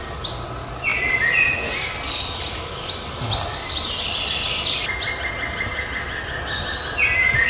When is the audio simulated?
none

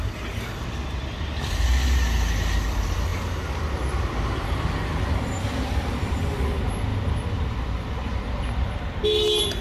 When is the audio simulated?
6.9-9.0 (vocoder, BigVGAN v2)

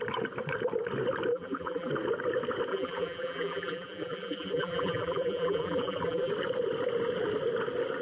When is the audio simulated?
1.3-1.9 (vocoder, BigVGAN v2); 2.7-6.3

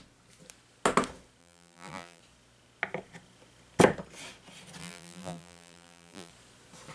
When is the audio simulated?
1.4-2.2 (vocoder, BigVGAN v2); 4.8-6.3

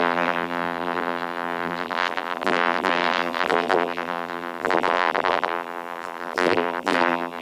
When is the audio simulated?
0.0-7.4 (vocoder, BigVGAN v2)

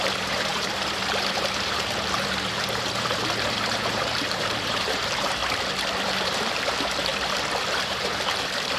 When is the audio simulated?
0.0-5.4 (vocoder, BigVGAN v2); 6.0-7.1; 7.7-8.8